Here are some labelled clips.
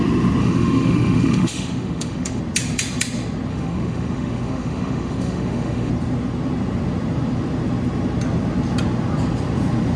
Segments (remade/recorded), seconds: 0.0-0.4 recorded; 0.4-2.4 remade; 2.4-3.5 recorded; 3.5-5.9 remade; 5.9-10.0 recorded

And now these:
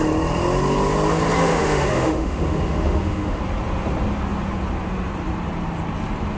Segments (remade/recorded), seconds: 0.0-1.4 recorded; 1.4-3.4 remade; 3.4-6.4 recorded